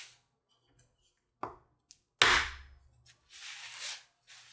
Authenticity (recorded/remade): recorded